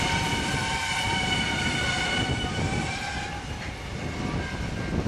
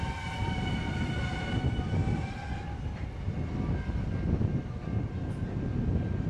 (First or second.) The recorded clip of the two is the second